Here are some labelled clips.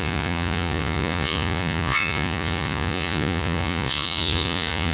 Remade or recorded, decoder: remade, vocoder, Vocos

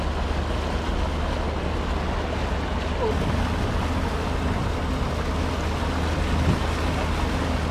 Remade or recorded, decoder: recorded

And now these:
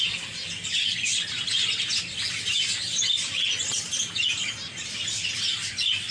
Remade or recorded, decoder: recorded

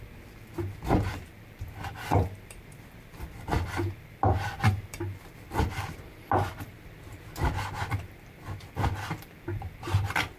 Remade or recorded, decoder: remade, vocoder, BigVGAN v2